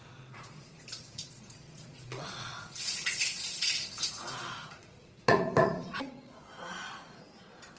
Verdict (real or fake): fake